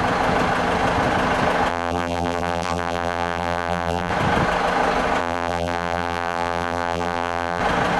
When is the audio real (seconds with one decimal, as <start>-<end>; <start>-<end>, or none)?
0.0-1.7; 4.1-5.2; 7.6-8.0